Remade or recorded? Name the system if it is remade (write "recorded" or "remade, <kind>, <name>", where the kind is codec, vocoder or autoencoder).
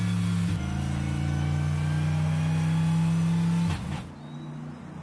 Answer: recorded